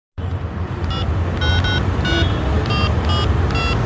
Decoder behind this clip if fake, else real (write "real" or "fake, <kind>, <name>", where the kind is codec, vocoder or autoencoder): real